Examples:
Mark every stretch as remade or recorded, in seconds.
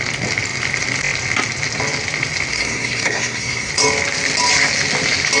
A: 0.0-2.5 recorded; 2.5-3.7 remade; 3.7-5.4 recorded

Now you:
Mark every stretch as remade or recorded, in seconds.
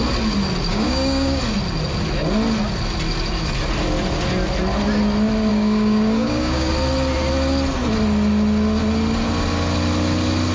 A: 0.0-0.7 recorded; 0.7-1.4 remade; 1.4-5.5 recorded; 5.5-6.7 remade; 6.7-10.5 recorded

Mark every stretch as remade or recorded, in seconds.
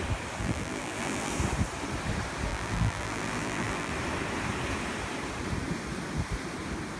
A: 0.0-0.4 recorded; 0.4-1.3 remade; 1.3-2.5 recorded; 2.5-3.9 remade; 3.9-7.0 recorded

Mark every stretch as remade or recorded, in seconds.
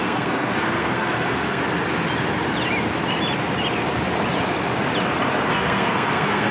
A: 0.0-1.6 remade; 1.6-5.5 recorded; 5.5-6.5 remade